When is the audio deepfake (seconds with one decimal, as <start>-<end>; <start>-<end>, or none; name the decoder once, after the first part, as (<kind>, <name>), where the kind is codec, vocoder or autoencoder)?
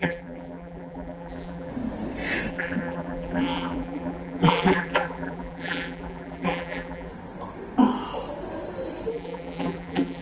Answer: 0.0-1.7 (vocoder, BigVGAN v2); 2.5-7.1; 9.1-10.2